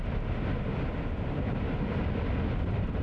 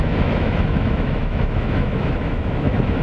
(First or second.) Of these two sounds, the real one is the first